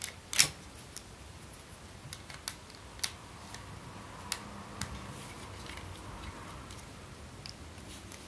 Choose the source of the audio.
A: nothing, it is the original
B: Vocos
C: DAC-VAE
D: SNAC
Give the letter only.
A